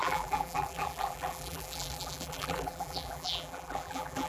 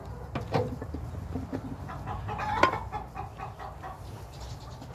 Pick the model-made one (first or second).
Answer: first